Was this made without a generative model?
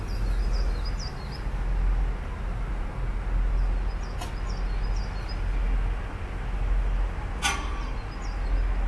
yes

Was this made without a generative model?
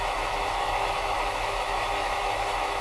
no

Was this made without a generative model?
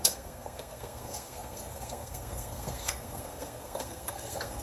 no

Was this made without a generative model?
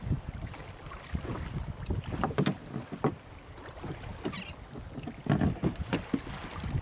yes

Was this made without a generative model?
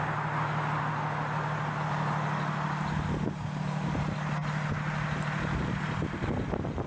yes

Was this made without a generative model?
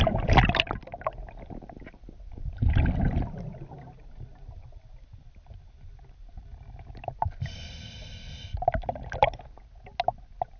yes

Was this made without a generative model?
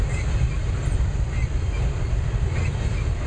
yes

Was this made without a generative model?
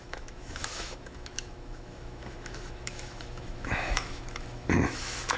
no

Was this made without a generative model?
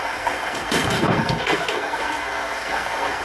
no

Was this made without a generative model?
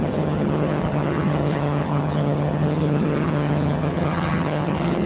no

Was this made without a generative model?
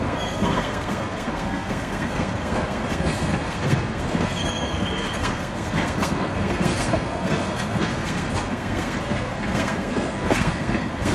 no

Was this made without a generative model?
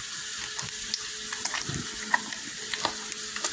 yes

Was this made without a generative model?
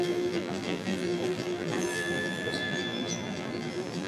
no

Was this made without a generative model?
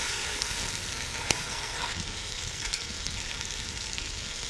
no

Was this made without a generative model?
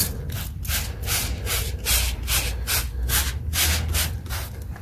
yes